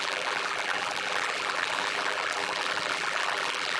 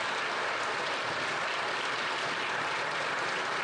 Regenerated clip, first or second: first